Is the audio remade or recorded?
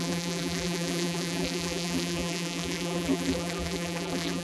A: remade